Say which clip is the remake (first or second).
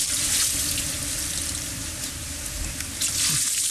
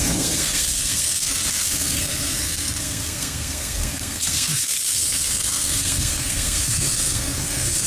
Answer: second